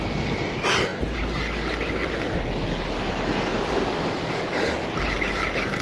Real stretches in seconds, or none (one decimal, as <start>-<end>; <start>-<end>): 0.0-5.8